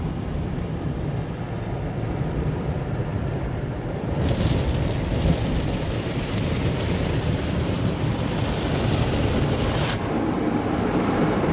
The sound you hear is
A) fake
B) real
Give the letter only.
A